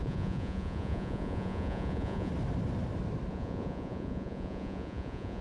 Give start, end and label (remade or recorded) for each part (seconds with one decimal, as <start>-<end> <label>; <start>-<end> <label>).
0.0-2.3 remade; 2.3-3.3 recorded; 3.3-5.4 remade